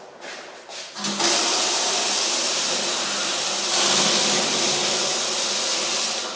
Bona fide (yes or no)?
yes